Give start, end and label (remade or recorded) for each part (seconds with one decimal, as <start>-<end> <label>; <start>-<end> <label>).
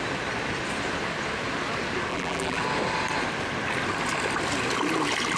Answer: 0.0-2.1 recorded; 2.1-2.6 remade; 2.6-5.4 recorded